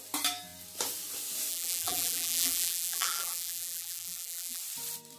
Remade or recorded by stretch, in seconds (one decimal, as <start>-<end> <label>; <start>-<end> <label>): 0.0-1.5 recorded; 1.5-4.6 remade; 4.6-5.2 recorded